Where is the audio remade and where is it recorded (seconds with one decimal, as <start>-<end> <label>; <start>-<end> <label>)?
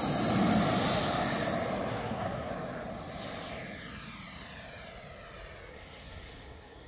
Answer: 0.0-1.9 recorded; 1.9-2.5 remade; 2.5-5.7 recorded; 5.7-6.9 remade